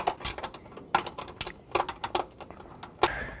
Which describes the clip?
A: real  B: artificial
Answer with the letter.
A